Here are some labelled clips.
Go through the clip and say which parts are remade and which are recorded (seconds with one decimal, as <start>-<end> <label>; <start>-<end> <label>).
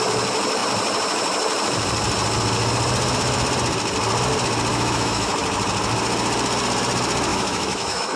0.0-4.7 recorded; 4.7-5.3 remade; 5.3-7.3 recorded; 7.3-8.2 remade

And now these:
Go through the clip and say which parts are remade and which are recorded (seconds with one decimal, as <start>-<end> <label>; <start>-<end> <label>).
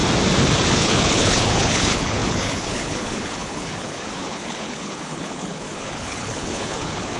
0.0-0.7 recorded; 0.7-7.2 remade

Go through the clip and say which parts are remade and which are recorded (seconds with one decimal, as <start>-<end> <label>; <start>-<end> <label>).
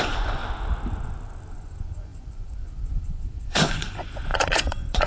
0.0-0.4 remade; 0.4-1.5 recorded; 1.5-5.1 remade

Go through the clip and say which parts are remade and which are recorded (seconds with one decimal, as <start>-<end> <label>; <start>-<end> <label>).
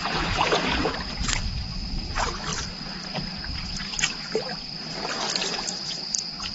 0.0-1.3 remade; 1.3-6.5 recorded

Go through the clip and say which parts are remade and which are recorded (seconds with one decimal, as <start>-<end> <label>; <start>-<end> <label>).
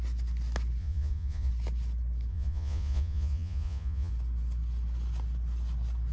0.0-0.8 recorded; 0.8-1.5 remade; 1.5-2.3 recorded; 2.3-4.1 remade; 4.1-6.1 recorded